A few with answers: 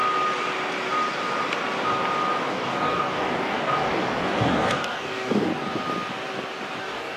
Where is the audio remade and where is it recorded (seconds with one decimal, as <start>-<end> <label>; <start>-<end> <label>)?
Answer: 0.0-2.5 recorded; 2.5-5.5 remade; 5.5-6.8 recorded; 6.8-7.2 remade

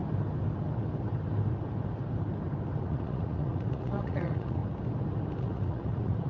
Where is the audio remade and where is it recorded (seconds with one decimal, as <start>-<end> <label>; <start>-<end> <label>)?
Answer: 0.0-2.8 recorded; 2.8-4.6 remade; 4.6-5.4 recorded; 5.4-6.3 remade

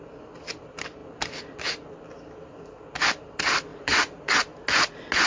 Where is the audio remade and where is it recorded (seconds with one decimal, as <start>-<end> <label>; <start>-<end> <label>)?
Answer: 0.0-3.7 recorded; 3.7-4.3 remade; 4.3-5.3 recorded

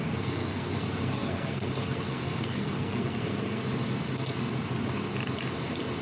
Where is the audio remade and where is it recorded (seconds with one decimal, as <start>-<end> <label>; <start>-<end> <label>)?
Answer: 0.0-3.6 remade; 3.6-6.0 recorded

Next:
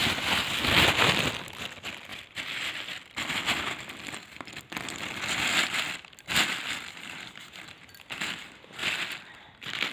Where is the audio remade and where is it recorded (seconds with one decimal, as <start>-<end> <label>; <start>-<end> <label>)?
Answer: 0.0-9.9 recorded

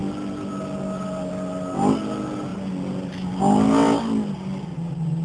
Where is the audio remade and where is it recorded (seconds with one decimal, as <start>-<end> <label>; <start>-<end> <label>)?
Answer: 0.0-5.2 recorded